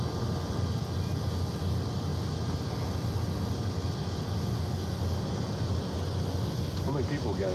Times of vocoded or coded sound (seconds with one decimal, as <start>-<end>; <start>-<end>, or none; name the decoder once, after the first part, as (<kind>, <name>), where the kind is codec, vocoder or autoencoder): none